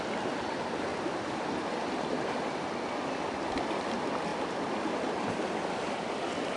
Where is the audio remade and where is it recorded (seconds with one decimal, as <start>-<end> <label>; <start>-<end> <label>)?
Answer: 0.0-0.9 recorded; 0.9-2.7 remade; 2.7-6.6 recorded